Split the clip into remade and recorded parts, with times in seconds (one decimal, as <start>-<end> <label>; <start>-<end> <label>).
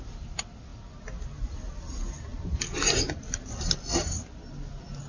0.0-0.7 remade; 0.7-1.3 recorded; 1.3-5.1 remade